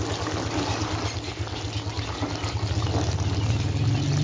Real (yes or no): yes